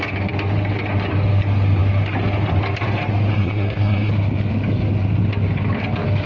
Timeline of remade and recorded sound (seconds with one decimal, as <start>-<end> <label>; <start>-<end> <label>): 0.0-3.3 recorded; 3.3-4.1 remade; 4.1-6.3 recorded